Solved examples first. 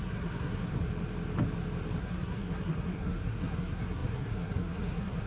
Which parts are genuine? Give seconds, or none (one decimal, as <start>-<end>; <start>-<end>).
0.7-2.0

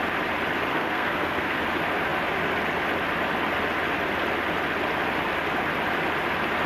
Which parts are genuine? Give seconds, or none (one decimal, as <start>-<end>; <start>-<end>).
0.0-0.7; 1.6-6.7

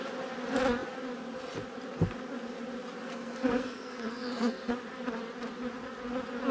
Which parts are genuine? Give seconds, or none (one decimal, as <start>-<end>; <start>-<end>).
0.0-3.0; 4.7-6.5

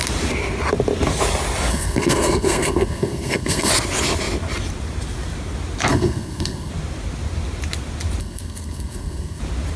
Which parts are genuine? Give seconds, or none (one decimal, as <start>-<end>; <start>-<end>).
0.0-1.7; 3.7-5.9; 6.7-8.2; 9.4-9.8